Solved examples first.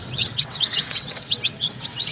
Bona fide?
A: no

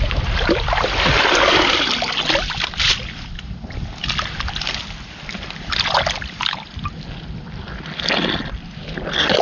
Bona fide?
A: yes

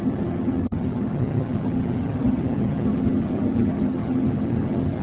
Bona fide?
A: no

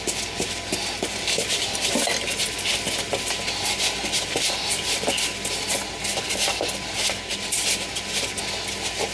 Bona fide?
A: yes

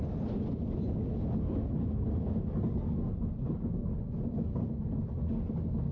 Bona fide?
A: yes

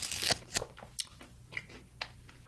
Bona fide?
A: yes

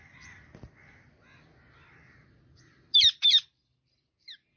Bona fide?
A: yes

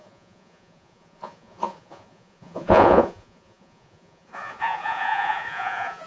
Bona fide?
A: no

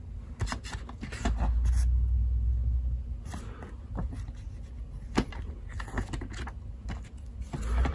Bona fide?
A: yes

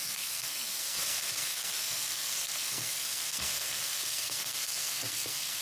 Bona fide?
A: no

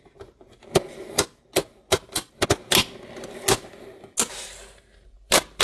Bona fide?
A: yes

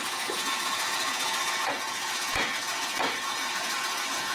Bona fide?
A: no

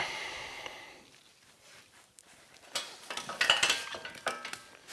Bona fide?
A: yes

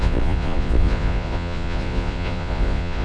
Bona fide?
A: no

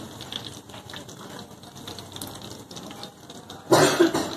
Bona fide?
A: yes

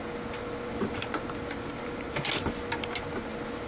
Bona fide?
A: yes